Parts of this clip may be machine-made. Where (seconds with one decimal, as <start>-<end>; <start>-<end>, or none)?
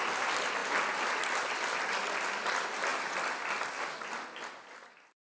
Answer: none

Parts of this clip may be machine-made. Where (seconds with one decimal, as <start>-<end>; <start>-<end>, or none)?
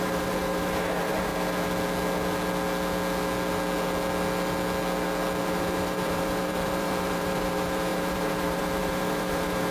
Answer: 0.0-1.3; 5.4-9.7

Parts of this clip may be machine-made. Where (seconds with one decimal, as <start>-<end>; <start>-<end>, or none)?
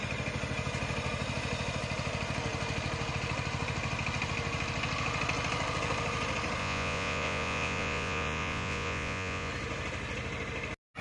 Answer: 6.6-9.5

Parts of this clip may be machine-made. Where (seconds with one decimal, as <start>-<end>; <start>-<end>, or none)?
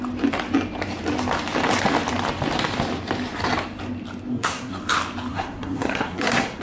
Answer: 4.3-4.8; 5.3-6.6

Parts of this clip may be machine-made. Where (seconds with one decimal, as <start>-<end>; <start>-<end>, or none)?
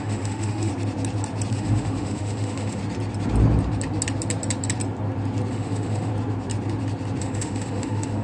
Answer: 0.0-0.7; 1.5-2.8; 5.5-6.1; 7.2-8.2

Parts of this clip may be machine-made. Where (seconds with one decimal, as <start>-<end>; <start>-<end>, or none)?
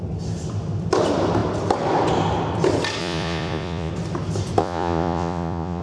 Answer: 3.0-3.9; 4.6-5.8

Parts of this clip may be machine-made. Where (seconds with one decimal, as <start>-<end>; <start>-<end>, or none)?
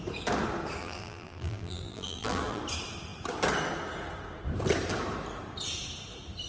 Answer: 0.8-2.6